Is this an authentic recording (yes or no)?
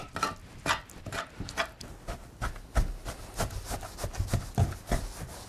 yes